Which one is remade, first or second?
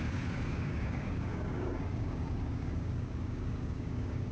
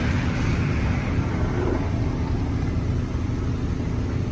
first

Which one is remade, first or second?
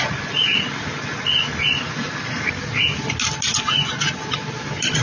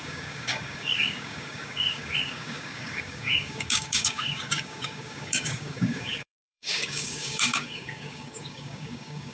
second